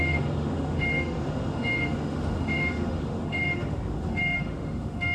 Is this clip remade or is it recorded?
remade